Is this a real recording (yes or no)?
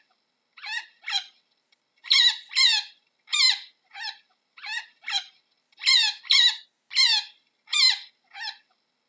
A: yes